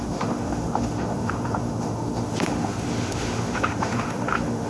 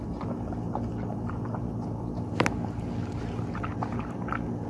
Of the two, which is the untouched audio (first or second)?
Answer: second